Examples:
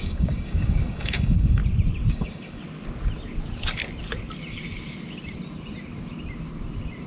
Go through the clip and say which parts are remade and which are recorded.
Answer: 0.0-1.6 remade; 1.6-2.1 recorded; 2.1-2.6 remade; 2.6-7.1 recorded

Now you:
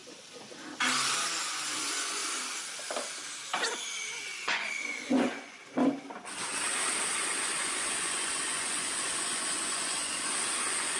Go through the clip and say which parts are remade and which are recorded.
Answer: 0.0-1.4 recorded; 1.4-2.2 remade; 2.2-4.2 recorded; 4.2-5.6 remade; 5.6-7.1 recorded; 7.1-11.0 remade

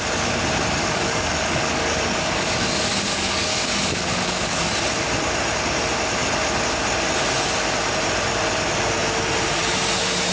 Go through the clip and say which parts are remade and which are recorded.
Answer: 0.0-0.8 recorded; 0.8-4.6 remade; 4.6-10.3 recorded

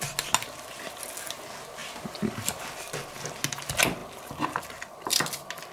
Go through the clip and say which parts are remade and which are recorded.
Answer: 0.0-5.7 recorded

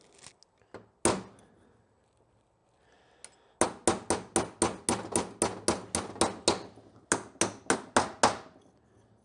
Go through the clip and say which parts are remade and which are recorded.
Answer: 0.0-9.2 recorded

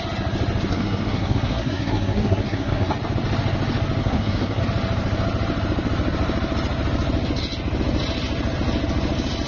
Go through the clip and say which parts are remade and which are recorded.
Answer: 0.0-0.7 recorded; 0.7-2.9 remade; 2.9-4.0 recorded; 4.0-4.6 remade; 4.6-9.5 recorded